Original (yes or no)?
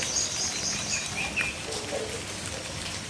yes